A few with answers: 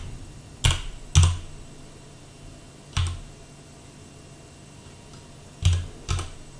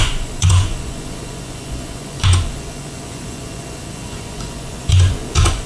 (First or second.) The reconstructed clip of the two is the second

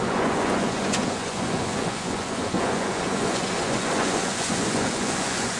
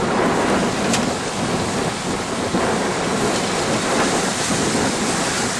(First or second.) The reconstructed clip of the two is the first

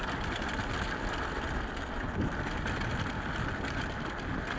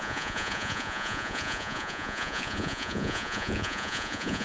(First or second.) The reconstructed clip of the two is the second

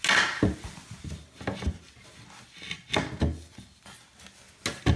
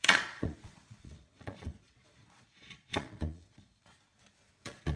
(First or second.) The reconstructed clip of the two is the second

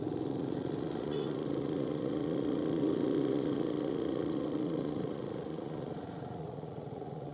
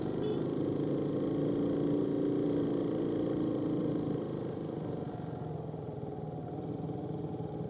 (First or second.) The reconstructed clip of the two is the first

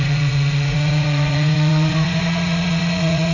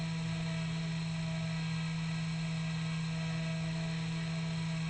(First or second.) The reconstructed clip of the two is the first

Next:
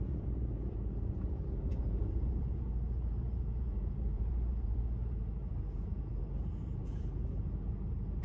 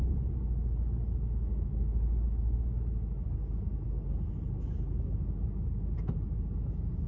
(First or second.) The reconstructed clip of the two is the first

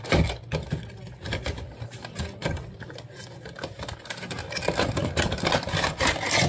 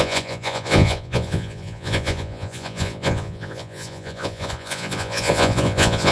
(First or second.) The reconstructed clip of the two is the second